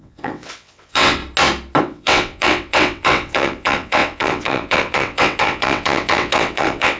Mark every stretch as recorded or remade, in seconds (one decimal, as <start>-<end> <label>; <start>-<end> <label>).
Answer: 0.0-1.2 remade; 1.2-1.8 recorded; 1.8-7.0 remade